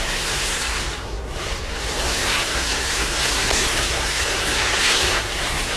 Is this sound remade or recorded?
remade